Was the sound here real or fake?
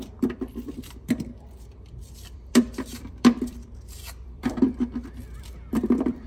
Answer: fake